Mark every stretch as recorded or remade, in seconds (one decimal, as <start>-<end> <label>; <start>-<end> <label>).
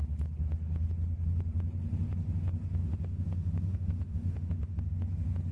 0.0-2.8 recorded; 2.8-4.8 remade; 4.8-5.5 recorded